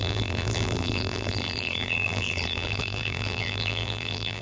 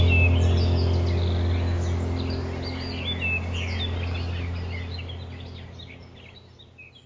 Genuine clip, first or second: second